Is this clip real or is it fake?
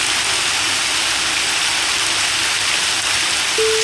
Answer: real